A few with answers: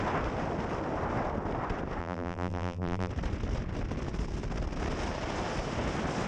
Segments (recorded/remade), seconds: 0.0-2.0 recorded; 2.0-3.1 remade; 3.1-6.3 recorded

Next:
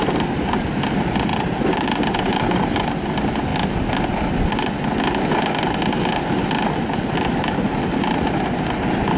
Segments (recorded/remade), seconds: 0.0-1.3 recorded; 1.3-2.8 remade; 2.8-9.2 recorded

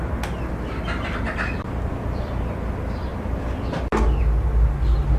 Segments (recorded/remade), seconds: 0.0-1.9 recorded; 1.9-2.4 remade; 2.4-3.1 recorded; 3.1-3.7 remade; 3.7-5.2 recorded

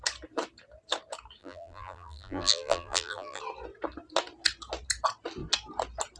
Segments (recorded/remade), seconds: 0.0-1.4 recorded; 1.4-3.4 remade; 3.4-6.2 recorded

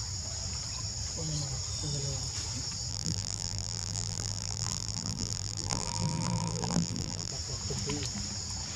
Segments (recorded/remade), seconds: 0.0-2.9 recorded; 2.9-7.3 remade; 7.3-8.8 recorded

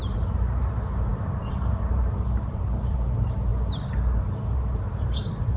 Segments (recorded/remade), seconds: 0.0-3.5 remade; 3.5-4.4 recorded; 4.4-5.6 remade

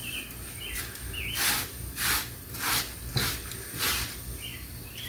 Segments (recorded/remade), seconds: 0.0-5.1 recorded

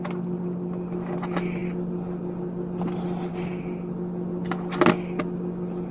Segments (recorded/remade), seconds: 0.0-5.9 recorded